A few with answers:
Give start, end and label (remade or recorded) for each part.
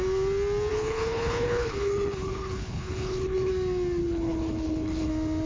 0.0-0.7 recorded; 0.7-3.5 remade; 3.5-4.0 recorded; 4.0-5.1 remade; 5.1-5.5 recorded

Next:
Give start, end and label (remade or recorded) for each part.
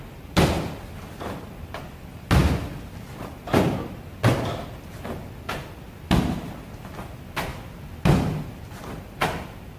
0.0-9.8 recorded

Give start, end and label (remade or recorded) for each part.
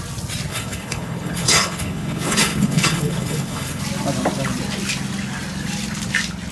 0.0-0.5 recorded; 0.5-3.8 remade; 3.8-6.5 recorded